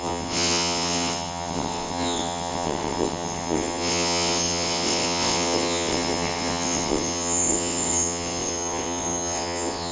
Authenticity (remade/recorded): remade